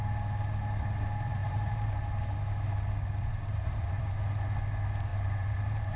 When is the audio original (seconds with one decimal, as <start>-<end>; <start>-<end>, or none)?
0.0-1.4; 1.9-3.3; 4.1-5.1